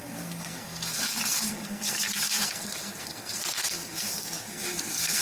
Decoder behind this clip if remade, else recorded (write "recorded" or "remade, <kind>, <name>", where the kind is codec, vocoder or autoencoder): remade, codec, SNAC